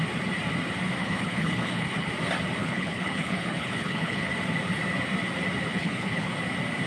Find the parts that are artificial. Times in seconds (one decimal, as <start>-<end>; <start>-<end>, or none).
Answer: 1.0-2.1; 2.6-4.3; 5.7-6.3